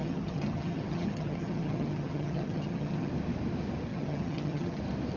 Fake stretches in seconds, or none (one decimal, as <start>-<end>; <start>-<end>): 0.0-3.1; 3.9-4.8